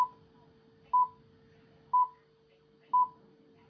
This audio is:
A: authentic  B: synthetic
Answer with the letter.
A